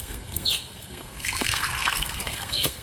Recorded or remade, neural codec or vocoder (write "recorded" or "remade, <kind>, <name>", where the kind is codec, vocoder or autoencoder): remade, codec, SNAC